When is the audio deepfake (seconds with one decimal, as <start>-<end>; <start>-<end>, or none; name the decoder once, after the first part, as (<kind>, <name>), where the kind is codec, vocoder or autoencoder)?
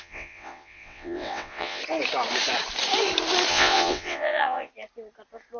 0.0-1.8 (vocoder, WaveNeXt); 3.5-4.7